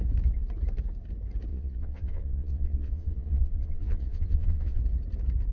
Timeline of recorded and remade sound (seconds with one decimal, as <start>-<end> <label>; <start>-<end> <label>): 0.0-1.5 recorded; 1.5-4.8 remade; 4.8-5.5 recorded